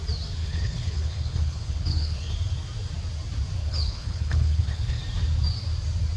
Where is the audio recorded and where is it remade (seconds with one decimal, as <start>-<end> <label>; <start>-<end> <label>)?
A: 0.0-0.4 recorded; 0.4-2.3 remade; 2.3-3.6 recorded; 3.6-5.0 remade; 5.0-6.2 recorded